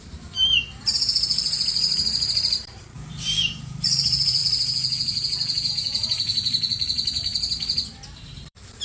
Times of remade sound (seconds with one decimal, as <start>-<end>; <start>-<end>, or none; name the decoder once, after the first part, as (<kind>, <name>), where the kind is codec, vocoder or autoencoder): 0.0-4.4 (vocoder, BigVGAN v2); 5.7-7.3; 8.2-8.8